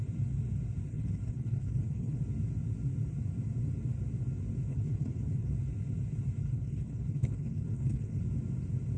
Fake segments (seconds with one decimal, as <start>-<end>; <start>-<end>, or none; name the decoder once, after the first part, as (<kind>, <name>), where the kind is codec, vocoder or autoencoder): 0.9-2.2 (codec, HILCodec); 4.7-5.5; 6.4-8.2

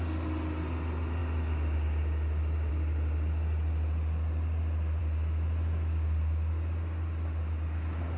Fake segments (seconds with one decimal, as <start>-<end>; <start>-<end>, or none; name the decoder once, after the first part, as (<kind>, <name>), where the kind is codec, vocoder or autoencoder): none

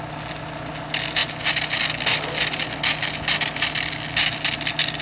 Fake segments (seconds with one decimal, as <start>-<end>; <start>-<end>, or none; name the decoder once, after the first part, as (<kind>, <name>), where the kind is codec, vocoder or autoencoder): none

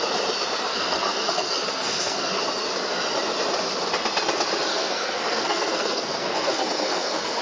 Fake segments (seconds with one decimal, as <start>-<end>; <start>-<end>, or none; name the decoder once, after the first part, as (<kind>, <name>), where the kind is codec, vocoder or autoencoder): 0.7-2.4 (codec, SNAC); 4.7-7.4